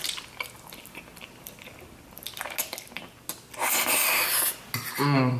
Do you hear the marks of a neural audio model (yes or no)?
no